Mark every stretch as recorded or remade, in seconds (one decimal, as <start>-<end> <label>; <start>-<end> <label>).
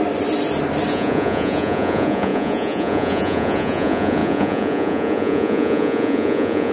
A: 0.0-0.9 recorded; 0.9-6.7 remade